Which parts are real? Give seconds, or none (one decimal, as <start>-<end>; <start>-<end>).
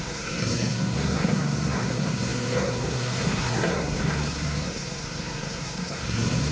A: none